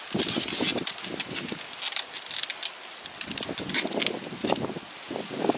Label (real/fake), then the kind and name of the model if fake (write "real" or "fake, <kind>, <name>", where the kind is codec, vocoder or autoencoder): real